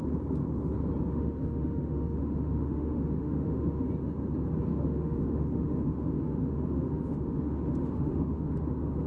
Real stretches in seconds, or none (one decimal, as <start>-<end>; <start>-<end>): 0.0-1.1; 3.9-4.7; 8.5-9.1